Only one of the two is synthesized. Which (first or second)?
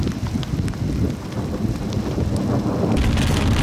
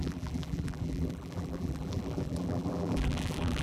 second